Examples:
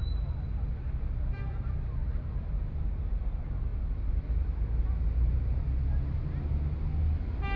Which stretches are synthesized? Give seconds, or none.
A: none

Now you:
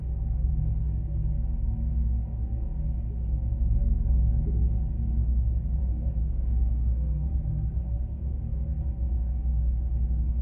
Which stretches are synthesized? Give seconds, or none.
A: 0.0-0.5 (codec, SNAC); 6.2-8.4

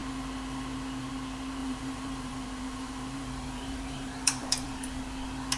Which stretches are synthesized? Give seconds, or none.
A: 1.6-5.0 (vocoder, BigVGAN v2)

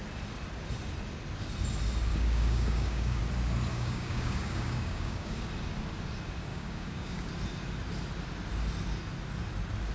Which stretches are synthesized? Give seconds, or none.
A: 2.1-3.2 (codec, DAC); 3.7-5.4; 6.5-7.3

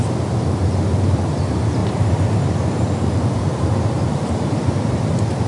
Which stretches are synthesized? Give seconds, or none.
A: 1.8-5.1 (vocoder, BigVGAN v2)

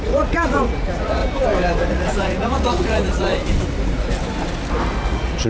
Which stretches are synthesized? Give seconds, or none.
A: 0.0-1.2 (vocoder, Vocos); 1.9-3.3; 5.1-5.5

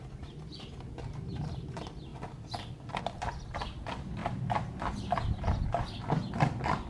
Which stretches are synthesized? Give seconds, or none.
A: none